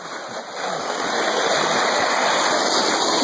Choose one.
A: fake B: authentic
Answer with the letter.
B